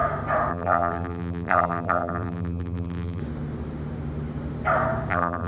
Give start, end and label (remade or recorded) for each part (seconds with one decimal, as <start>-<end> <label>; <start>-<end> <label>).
0.0-0.5 recorded; 0.5-3.2 remade; 3.2-5.1 recorded; 5.1-5.5 remade